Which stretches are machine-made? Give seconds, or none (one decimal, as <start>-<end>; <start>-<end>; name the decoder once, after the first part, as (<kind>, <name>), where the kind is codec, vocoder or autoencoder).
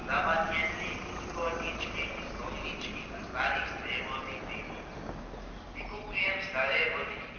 none